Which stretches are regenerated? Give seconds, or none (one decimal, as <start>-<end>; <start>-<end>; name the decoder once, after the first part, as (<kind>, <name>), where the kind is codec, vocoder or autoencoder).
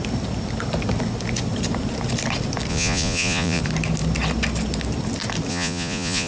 2.7-3.6 (vocoder, Vocos); 5.5-6.3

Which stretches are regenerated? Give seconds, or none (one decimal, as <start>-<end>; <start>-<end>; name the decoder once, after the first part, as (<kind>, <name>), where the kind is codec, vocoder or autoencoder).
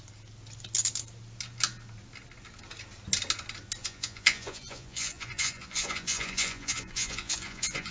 3.8-7.9 (vocoder, Vocos)